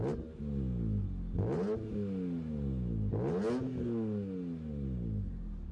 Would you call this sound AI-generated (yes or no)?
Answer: no